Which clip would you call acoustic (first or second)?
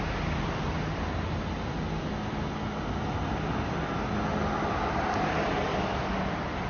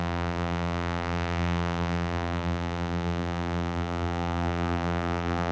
first